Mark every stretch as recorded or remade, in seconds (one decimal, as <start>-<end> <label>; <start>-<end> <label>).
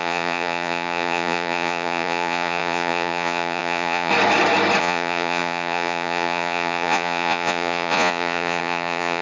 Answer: 0.0-4.1 remade; 4.1-4.8 recorded; 4.8-9.2 remade